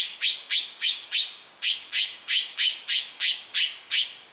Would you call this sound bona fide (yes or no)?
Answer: no